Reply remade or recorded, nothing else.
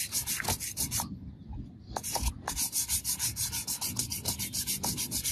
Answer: recorded